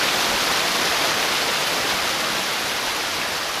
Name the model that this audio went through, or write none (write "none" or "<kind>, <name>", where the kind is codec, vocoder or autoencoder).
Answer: none